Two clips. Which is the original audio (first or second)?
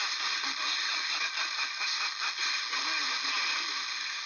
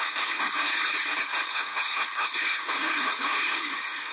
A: first